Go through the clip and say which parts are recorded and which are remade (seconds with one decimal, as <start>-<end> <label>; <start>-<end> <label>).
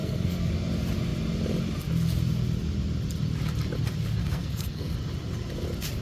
0.0-0.5 remade; 0.5-4.2 recorded; 4.2-4.9 remade; 4.9-6.0 recorded